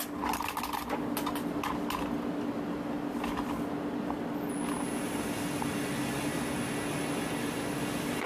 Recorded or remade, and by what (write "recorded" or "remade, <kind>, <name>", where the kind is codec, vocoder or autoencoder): recorded